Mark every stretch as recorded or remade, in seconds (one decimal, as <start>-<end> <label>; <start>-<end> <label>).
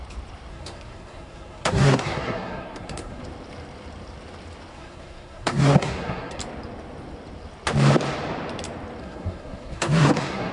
0.0-0.5 recorded; 0.5-3.2 remade; 3.2-4.7 recorded; 4.7-6.4 remade; 6.4-9.0 recorded; 9.0-10.5 remade